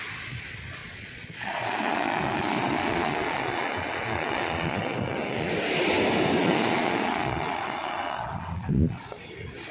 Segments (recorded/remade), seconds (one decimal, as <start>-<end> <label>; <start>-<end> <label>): 0.0-0.8 recorded; 0.8-5.5 remade; 5.5-6.4 recorded; 6.4-9.2 remade; 9.2-9.7 recorded